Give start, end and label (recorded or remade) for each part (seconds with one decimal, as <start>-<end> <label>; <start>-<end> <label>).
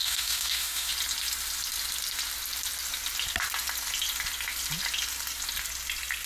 0.0-0.9 remade; 0.9-6.3 recorded